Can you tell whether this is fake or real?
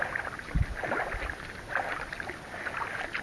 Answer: real